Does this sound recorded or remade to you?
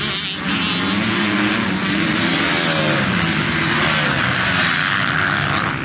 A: recorded